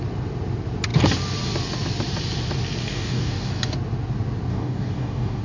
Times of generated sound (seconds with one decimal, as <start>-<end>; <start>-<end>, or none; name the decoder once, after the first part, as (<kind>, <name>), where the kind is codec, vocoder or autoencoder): 2.8-3.5 (codec, DAC); 4.5-5.4